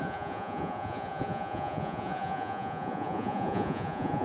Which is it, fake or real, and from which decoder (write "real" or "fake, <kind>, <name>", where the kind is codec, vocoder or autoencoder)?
fake, vocoder, Vocos